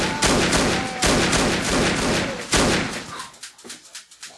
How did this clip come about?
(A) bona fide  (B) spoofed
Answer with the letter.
A